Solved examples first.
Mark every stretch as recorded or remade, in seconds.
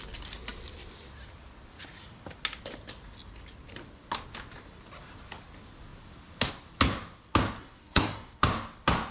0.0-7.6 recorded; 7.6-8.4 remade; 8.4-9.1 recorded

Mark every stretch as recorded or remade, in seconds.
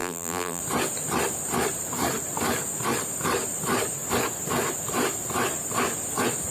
0.0-0.6 remade; 0.6-6.5 recorded